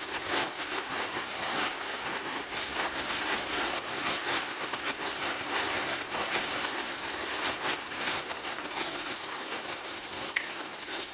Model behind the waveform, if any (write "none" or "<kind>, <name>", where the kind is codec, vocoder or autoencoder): codec, SNAC